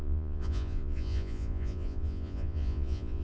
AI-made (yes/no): yes